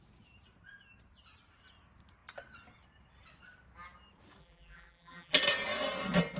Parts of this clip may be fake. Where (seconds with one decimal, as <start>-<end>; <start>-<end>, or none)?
4.4-5.4